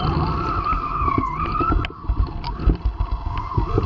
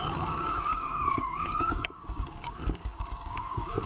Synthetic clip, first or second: second